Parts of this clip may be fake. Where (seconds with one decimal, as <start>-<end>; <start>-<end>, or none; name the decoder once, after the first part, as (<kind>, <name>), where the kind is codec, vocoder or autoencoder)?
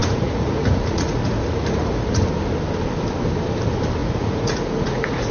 0.0-2.2 (vocoder, Vocos); 4.0-5.3